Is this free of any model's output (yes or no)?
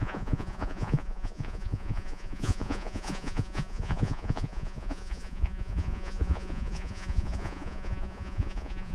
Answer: no